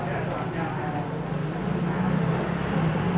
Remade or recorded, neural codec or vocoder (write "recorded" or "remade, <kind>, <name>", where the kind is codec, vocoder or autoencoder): recorded